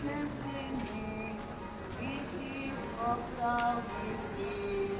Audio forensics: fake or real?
real